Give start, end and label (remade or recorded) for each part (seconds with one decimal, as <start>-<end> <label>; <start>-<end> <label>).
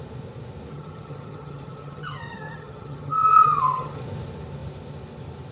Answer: 0.0-0.7 recorded; 0.7-4.0 remade; 4.0-5.5 recorded